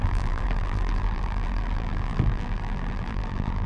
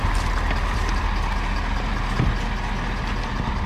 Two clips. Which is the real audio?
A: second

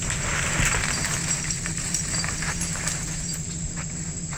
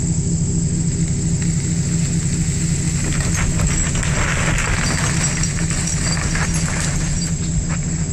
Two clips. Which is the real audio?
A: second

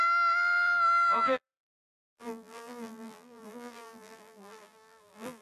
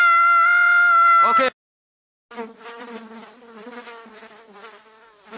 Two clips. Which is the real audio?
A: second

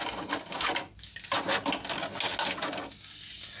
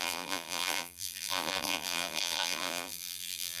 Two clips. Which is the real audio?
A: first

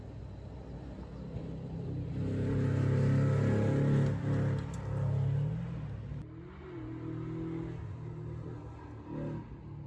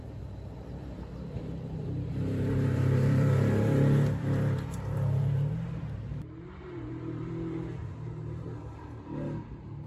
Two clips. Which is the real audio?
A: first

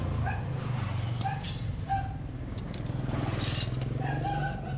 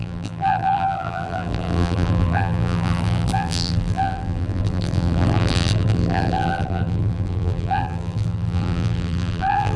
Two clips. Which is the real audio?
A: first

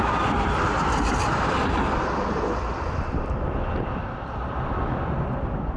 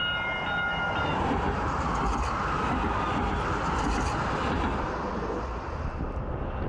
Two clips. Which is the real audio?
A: second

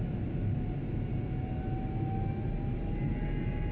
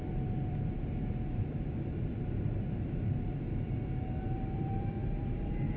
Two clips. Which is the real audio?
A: first